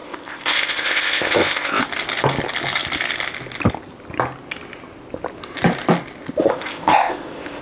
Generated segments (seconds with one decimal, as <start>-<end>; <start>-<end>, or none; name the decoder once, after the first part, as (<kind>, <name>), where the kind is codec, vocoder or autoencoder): 0.0-1.8 (codec, ZipCodec); 6.4-7.6